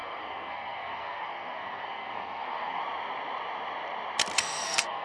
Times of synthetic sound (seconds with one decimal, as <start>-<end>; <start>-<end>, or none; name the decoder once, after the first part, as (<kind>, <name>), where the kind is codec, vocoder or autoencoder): 0.0-2.8 (codec, SNAC); 4.4-5.0